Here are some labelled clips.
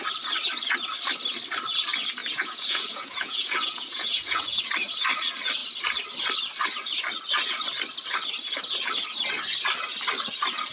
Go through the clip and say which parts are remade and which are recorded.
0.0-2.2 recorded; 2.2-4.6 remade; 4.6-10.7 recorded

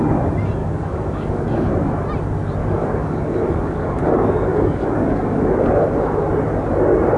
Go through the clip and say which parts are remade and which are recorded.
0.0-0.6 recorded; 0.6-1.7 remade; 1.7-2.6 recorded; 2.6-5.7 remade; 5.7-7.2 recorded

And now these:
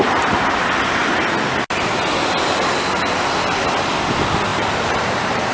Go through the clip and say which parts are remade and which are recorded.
0.0-4.5 recorded; 4.5-5.5 remade